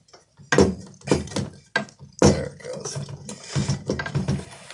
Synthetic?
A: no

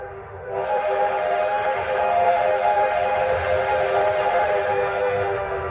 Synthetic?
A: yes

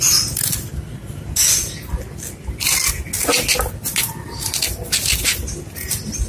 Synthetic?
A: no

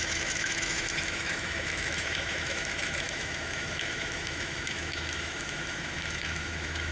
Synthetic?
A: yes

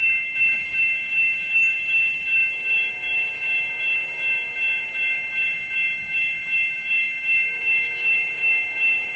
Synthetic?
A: yes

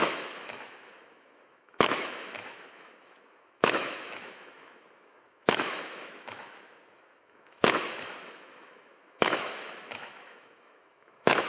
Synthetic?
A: yes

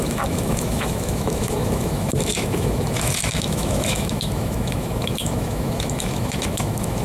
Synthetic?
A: yes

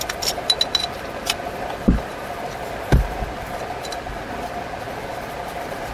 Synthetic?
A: no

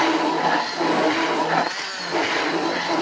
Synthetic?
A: no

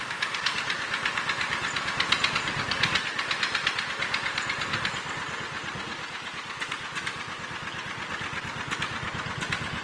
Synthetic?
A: no